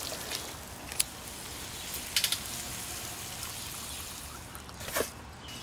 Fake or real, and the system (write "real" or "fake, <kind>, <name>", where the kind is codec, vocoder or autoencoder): real